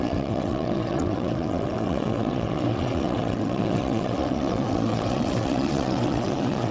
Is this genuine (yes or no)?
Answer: no